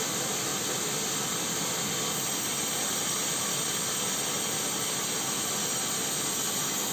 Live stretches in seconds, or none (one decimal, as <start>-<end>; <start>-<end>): 0.0-6.9